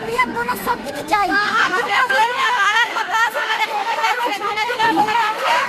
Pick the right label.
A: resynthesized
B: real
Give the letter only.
A